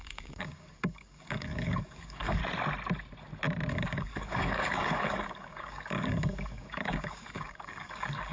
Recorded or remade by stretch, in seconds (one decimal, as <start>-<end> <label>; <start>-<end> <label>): 0.0-2.4 remade; 2.4-3.7 recorded; 3.7-8.3 remade